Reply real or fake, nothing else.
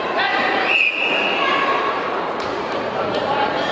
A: fake